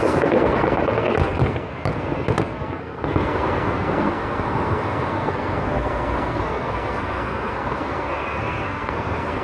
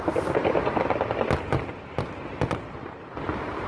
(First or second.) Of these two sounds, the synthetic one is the first